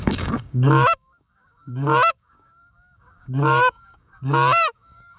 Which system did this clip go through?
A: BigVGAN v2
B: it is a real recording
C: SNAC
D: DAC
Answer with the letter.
D